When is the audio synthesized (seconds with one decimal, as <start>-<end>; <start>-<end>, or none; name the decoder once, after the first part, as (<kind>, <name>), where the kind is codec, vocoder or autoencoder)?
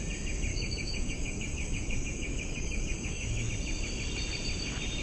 0.5-3.5 (codec, DAC)